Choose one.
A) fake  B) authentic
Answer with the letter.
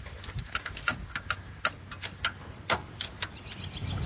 B